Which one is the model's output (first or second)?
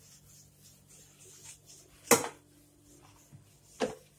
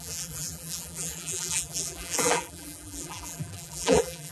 second